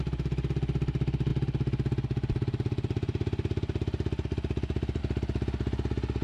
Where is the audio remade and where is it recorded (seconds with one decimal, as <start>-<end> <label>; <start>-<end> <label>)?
0.0-6.2 recorded